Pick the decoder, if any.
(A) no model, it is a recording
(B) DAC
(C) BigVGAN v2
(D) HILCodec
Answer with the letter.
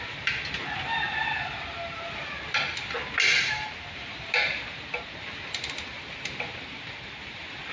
A